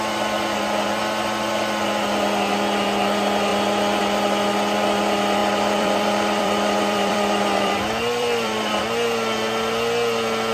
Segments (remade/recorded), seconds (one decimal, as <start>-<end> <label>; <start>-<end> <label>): 0.0-5.4 recorded; 5.4-8.8 remade; 8.8-10.5 recorded